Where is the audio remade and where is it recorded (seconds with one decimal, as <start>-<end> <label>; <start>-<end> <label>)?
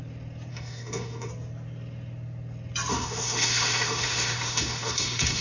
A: 0.0-0.5 recorded; 0.5-1.3 remade; 1.3-2.9 recorded; 2.9-5.4 remade